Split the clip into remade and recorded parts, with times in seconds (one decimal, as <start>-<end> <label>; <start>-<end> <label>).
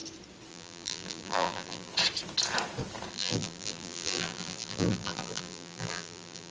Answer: 0.0-0.5 recorded; 0.5-1.9 remade; 1.9-3.1 recorded; 3.1-6.5 remade